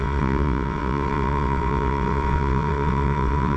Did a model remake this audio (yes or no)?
yes